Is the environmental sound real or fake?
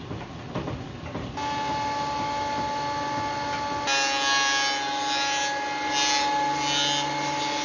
real